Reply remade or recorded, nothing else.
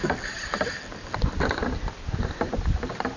recorded